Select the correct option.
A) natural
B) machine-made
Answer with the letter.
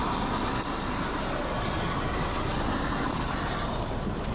A